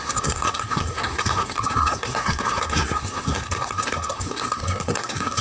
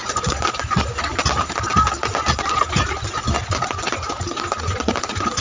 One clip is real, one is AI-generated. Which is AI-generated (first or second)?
first